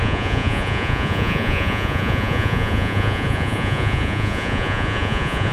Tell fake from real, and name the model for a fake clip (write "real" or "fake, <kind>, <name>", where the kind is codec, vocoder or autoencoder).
fake, vocoder, Vocos